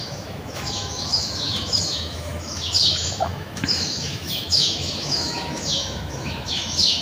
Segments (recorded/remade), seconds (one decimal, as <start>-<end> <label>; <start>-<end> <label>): 0.0-7.0 remade